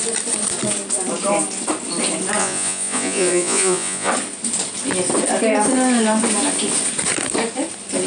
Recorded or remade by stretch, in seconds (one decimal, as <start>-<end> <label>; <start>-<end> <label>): 0.0-2.4 recorded; 2.4-4.1 remade; 4.1-8.1 recorded

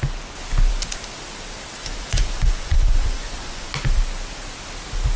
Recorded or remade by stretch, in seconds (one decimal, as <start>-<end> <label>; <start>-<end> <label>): 0.0-1.8 recorded; 1.8-3.7 remade; 3.7-5.2 recorded

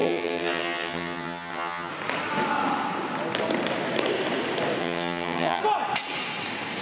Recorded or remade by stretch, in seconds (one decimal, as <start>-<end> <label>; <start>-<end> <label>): 0.0-1.9 remade; 1.9-4.8 recorded; 4.8-5.6 remade; 5.6-6.8 recorded

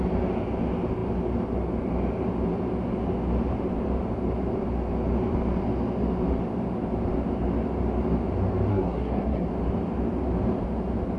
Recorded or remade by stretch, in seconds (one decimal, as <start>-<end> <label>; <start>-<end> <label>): 0.0-8.7 recorded; 8.7-9.5 remade; 9.5-11.2 recorded

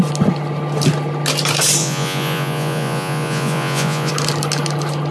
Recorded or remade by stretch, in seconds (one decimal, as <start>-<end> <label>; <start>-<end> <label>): 0.0-1.8 recorded; 1.8-4.1 remade; 4.1-5.1 recorded